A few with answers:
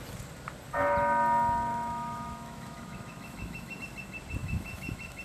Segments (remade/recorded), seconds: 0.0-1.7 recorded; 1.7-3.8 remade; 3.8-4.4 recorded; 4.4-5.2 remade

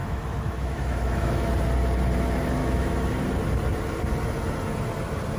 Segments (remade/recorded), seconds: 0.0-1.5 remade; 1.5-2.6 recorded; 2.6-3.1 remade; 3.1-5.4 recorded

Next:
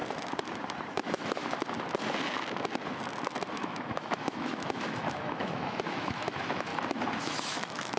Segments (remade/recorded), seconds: 0.0-0.9 recorded; 0.9-1.4 remade; 1.4-3.6 recorded; 3.6-6.7 remade; 6.7-7.2 recorded; 7.2-8.0 remade

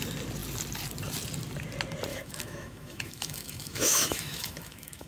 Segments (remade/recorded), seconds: 0.0-2.1 recorded; 2.1-5.1 remade